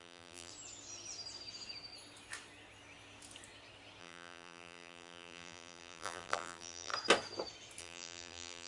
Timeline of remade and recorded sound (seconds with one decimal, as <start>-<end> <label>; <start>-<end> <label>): 0.0-0.5 remade; 0.5-4.0 recorded; 4.0-6.9 remade; 6.9-7.8 recorded; 7.8-8.7 remade